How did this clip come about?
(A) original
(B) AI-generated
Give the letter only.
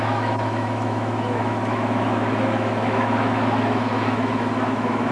B